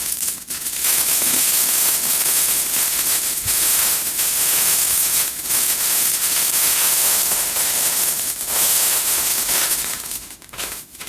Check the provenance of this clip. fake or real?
fake